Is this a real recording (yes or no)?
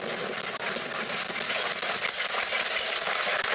yes